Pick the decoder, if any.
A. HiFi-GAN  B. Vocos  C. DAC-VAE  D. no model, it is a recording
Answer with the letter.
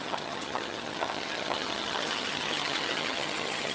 A